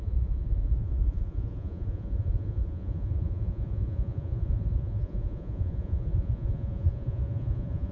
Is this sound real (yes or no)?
no